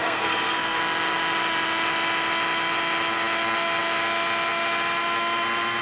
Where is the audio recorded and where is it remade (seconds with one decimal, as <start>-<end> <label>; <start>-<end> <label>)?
0.0-0.8 remade; 0.8-5.8 recorded